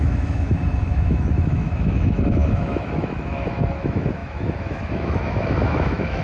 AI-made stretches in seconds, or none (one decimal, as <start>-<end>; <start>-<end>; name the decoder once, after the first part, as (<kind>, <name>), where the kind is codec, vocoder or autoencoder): 0.0-6.2 (autoencoder, DAC-VAE)